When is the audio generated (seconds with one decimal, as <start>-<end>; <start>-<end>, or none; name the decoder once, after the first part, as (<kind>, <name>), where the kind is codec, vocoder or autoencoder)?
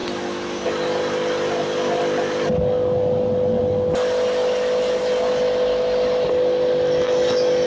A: none